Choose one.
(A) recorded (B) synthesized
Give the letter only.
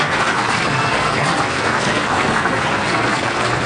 B